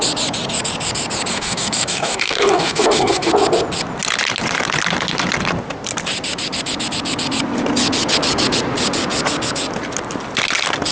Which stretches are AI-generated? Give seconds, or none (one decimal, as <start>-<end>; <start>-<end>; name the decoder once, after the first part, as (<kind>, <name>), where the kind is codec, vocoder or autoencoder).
1.3-3.3 (codec, DAC)